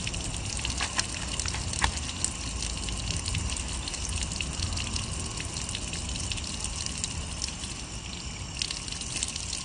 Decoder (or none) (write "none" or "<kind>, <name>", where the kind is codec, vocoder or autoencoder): none